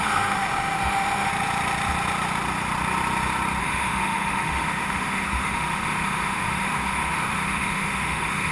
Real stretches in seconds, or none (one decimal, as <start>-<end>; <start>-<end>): 1.3-3.6

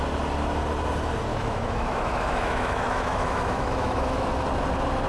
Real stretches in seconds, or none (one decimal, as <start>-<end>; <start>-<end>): 0.0-1.3; 4.3-5.1